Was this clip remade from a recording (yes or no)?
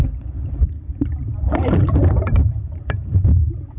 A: yes